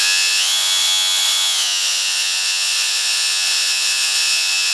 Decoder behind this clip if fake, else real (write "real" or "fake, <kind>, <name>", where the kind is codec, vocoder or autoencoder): fake, vocoder, Vocos